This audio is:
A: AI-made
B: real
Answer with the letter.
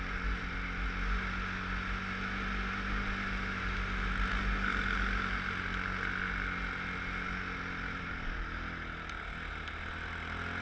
B